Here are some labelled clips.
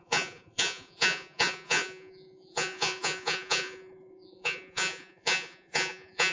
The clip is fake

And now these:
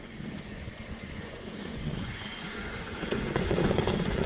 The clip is fake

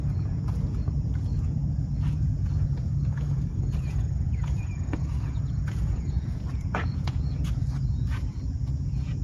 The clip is fake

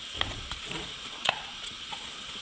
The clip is fake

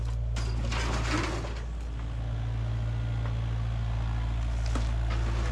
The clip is real